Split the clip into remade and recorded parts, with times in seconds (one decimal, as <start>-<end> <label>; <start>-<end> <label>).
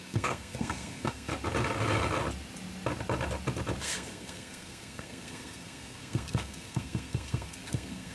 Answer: 0.0-1.3 remade; 1.3-3.8 recorded; 3.8-8.1 remade